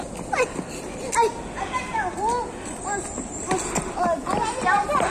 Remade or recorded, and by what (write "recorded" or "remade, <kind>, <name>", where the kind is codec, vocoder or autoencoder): recorded